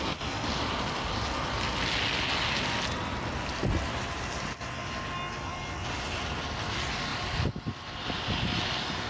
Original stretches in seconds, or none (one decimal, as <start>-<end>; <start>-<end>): 0.0-7.1; 8.0-9.1